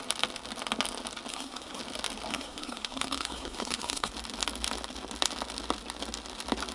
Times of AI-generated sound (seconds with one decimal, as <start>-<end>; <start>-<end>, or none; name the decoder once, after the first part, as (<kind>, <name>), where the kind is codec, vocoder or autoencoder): 1.3-1.8 (codec, SNAC); 2.3-4.1